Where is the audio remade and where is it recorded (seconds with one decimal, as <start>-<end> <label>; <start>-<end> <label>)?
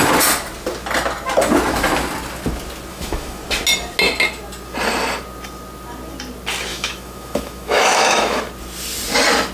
0.0-2.9 recorded; 2.9-3.4 remade; 3.4-6.7 recorded; 6.7-8.4 remade; 8.4-9.5 recorded